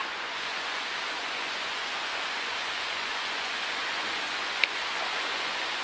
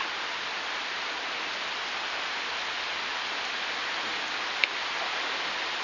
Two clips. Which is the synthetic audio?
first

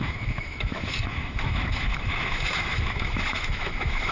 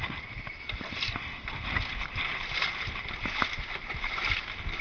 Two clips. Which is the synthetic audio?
first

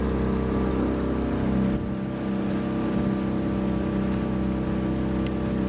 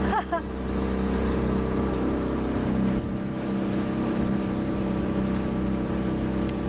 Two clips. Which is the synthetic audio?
second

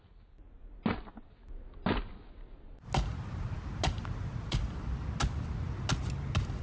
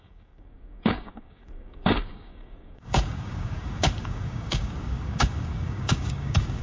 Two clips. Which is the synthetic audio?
second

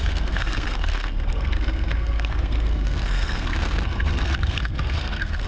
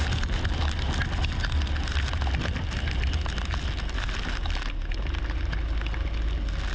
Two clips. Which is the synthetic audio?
first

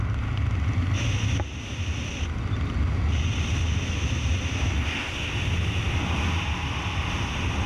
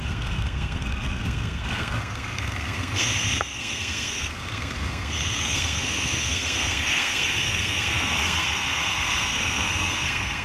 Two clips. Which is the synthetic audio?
second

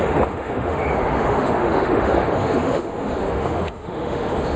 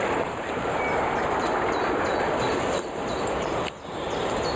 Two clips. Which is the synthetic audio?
first